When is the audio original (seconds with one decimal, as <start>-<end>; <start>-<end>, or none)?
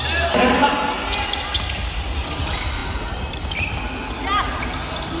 0.0-5.2